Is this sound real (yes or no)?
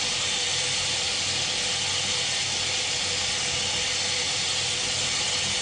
yes